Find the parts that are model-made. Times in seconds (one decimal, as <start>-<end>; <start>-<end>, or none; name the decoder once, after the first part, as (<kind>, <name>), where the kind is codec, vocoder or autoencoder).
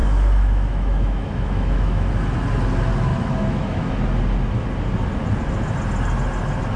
0.0-2.1 (autoencoder, DAC-VAE); 3.1-3.9